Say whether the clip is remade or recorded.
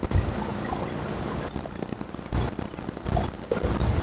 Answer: recorded